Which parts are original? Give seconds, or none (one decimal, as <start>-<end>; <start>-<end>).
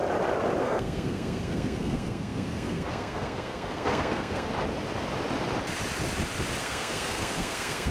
0.0-0.6; 4.5-6.6